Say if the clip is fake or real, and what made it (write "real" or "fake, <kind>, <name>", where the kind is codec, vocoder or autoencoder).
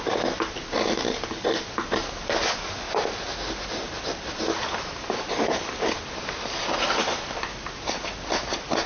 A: real